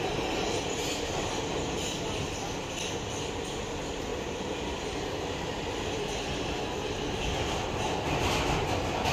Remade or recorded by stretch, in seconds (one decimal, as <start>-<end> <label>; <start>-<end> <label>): 0.0-9.1 recorded

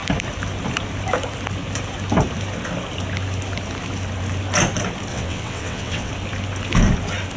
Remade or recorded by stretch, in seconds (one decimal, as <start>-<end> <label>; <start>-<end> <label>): 0.0-5.1 recorded; 5.1-6.1 remade; 6.1-7.4 recorded

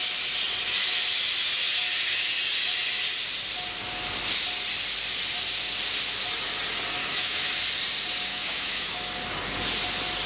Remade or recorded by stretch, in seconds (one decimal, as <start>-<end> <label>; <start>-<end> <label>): 0.0-7.0 recorded; 7.0-7.6 remade; 7.6-8.3 recorded; 8.3-8.9 remade; 8.9-10.3 recorded

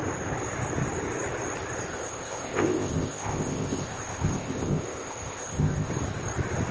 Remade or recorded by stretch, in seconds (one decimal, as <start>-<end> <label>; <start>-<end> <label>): 0.0-1.9 recorded; 1.9-5.9 remade; 5.9-6.7 recorded